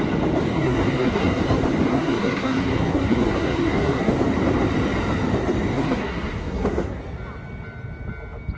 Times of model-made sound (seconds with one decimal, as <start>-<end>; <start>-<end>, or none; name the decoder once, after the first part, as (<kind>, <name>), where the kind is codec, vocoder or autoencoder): 0.5-1.4 (codec, SNAC); 1.9-4.1; 5.7-7.0